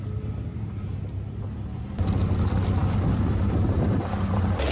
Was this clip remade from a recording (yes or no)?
no